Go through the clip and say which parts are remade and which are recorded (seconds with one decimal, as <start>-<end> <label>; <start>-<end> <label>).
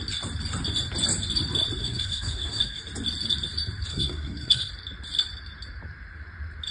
0.0-1.8 recorded; 1.8-2.8 remade; 2.8-3.9 recorded; 3.9-4.7 remade; 4.7-6.7 recorded